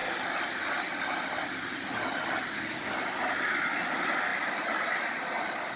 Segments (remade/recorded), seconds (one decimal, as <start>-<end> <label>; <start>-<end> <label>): 0.0-5.8 recorded